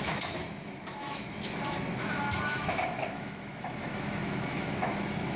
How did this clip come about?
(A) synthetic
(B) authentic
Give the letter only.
A